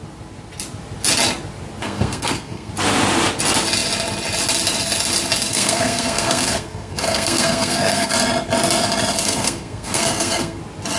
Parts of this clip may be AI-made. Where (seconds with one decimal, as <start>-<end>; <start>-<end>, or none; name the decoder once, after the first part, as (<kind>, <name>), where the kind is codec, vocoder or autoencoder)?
1.8-2.7 (codec, SNAC); 5.5-8.1; 9.2-10.6